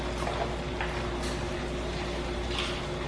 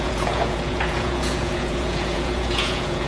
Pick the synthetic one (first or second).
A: second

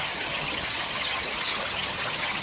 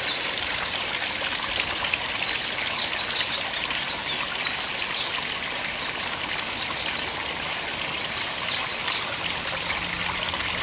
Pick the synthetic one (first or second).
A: first